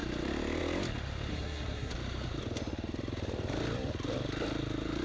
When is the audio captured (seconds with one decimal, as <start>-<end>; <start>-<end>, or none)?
0.0-1.3; 1.9-5.0